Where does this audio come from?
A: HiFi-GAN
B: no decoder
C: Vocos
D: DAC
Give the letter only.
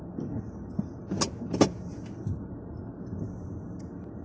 B